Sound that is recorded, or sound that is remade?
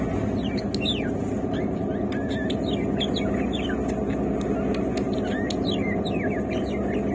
recorded